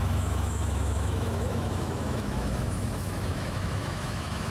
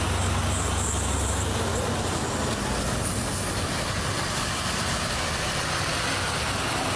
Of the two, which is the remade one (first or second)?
first